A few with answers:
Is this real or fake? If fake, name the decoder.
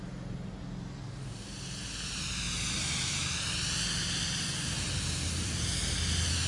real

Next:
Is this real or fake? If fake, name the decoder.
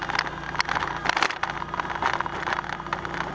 real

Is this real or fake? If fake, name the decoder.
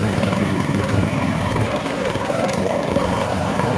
fake, codec, SNAC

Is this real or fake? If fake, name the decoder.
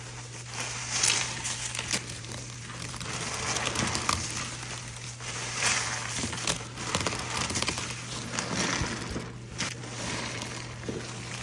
real